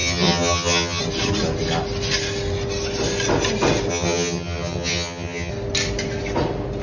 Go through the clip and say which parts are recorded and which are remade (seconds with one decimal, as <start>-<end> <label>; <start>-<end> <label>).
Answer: 0.0-1.0 remade; 1.0-3.9 recorded; 3.9-5.5 remade; 5.5-6.8 recorded